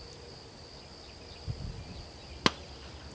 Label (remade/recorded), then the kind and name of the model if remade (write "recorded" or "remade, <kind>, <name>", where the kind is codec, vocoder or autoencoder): recorded